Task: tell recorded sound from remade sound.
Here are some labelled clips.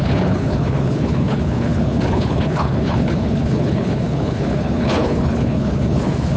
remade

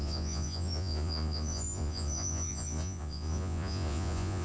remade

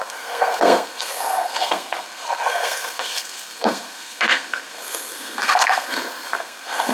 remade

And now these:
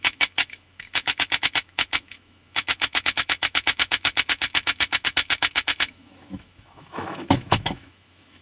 remade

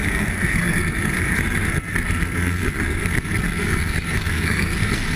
remade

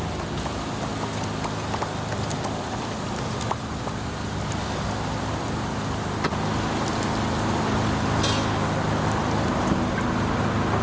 recorded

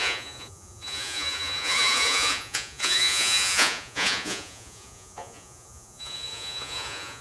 remade